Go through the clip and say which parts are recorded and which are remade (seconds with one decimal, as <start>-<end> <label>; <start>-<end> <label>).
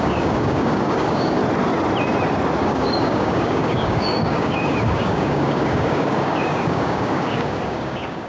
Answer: 0.0-1.4 remade; 1.4-2.6 recorded; 2.6-8.3 remade